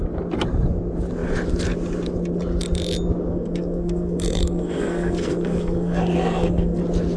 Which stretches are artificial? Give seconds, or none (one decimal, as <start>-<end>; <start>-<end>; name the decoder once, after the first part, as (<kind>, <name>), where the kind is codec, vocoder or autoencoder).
3.3-6.8 (codec, SNAC)